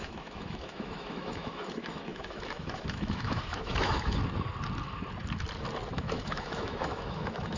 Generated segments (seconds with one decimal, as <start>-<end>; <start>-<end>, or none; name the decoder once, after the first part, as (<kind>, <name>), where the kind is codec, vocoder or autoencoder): 0.0-4.2 (autoencoder, DAC-VAE); 5.9-7.6